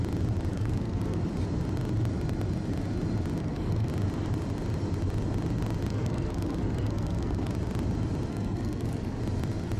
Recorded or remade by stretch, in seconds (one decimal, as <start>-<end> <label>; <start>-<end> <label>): 0.0-0.5 recorded; 0.5-1.2 remade; 1.2-3.4 recorded; 3.4-3.9 remade; 3.9-5.9 recorded; 5.9-7.5 remade; 7.5-8.3 recorded; 8.3-9.2 remade; 9.2-9.8 recorded